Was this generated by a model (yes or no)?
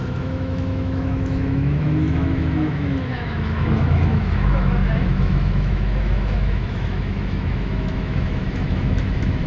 yes